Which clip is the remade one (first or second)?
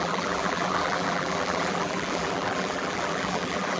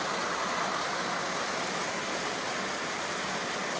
first